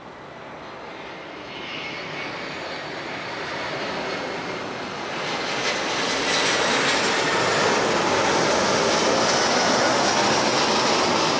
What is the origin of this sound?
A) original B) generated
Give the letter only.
A